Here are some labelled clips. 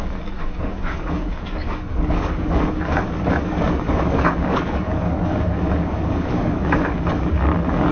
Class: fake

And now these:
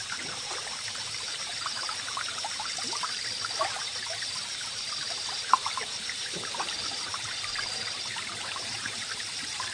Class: fake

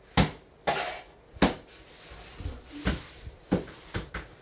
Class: real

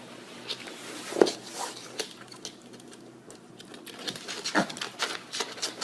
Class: real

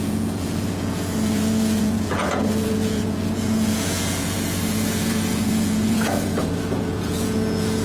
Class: fake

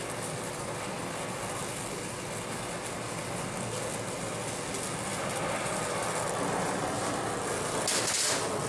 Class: real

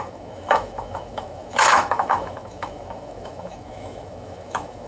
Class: fake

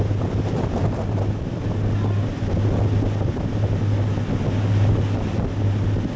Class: real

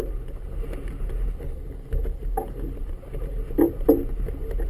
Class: real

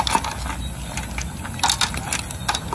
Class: real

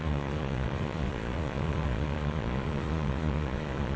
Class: fake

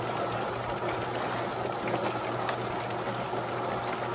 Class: real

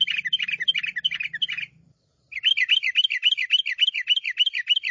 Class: fake